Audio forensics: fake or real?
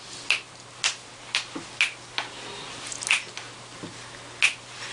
real